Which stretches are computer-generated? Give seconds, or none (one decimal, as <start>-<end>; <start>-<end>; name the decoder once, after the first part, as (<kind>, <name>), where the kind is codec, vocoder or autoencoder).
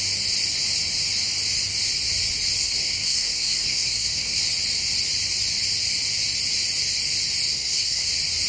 2.6-4.4 (codec, SNAC); 7.5-8.1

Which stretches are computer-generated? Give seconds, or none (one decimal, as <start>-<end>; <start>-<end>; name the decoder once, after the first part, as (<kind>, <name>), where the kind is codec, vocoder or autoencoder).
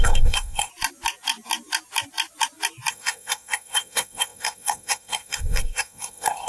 0.0-0.7 (codec, SNAC); 2.9-6.5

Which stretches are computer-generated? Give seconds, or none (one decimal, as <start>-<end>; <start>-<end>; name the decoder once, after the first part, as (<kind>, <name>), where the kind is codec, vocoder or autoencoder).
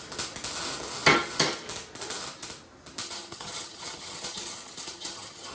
3.0-5.5 (vocoder, HiFi-GAN)